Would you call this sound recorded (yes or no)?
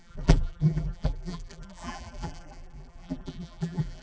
no